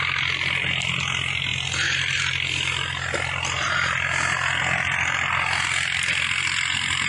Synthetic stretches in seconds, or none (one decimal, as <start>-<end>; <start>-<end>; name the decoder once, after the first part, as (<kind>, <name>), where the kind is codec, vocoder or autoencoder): none

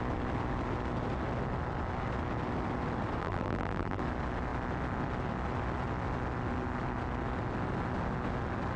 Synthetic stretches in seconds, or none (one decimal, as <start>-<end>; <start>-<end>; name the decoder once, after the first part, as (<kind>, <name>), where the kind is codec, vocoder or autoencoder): 3.2-4.0 (vocoder, BigVGAN v2)

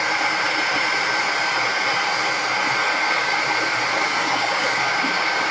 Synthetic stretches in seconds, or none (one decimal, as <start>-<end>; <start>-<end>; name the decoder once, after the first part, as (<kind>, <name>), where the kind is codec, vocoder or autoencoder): 2.9-3.4 (codec, DAC); 3.9-5.5